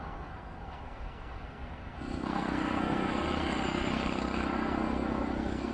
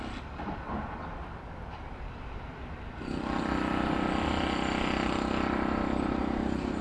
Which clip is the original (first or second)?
second